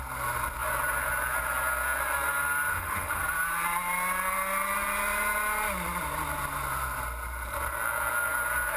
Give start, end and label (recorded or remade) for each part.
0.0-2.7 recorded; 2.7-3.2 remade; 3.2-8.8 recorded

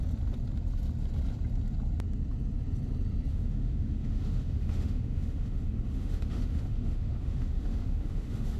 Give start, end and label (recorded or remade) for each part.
0.0-3.3 recorded; 3.3-8.6 remade

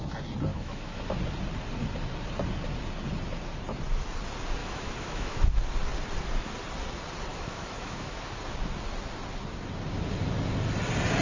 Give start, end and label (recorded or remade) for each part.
0.0-0.5 recorded; 0.5-1.0 remade; 1.0-4.6 recorded; 4.6-5.6 remade; 5.6-7.3 recorded; 7.3-8.2 remade; 8.2-11.2 recorded

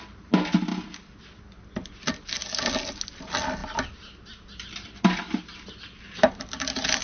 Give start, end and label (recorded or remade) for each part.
0.0-7.0 recorded

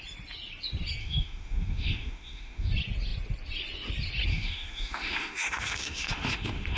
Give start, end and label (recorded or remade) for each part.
0.0-1.0 recorded; 1.0-2.7 remade; 2.7-4.3 recorded; 4.3-6.8 remade

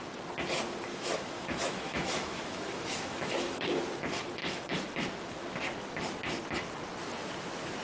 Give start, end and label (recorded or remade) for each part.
0.0-0.9 recorded; 0.9-3.8 remade; 3.8-4.4 recorded; 4.4-5.6 remade; 5.6-7.8 recorded

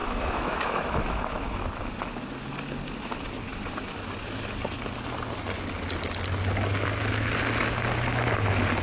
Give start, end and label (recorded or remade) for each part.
0.0-1.8 remade; 1.8-8.8 recorded

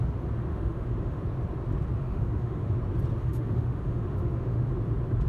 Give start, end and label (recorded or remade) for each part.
0.0-0.5 recorded; 0.5-1.2 remade; 1.2-2.0 recorded; 2.0-2.8 remade; 2.8-3.2 recorded; 3.2-4.7 remade; 4.7-5.3 recorded